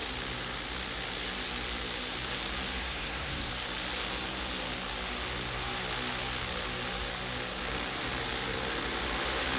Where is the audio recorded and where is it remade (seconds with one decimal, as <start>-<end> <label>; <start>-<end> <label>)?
0.0-2.8 recorded; 2.8-3.5 remade; 3.5-9.6 recorded